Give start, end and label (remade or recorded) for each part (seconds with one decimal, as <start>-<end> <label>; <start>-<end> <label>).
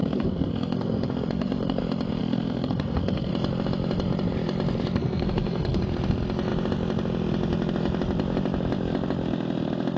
0.0-1.8 remade; 1.8-2.2 recorded; 2.2-3.3 remade; 3.3-5.0 recorded; 5.0-5.8 remade; 5.8-10.0 recorded